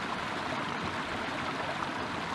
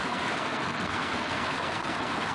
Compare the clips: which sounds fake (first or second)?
second